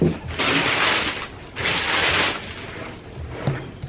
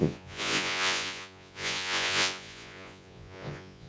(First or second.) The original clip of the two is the first